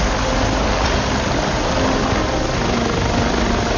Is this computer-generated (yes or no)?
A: no